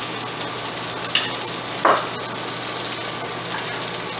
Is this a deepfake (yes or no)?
no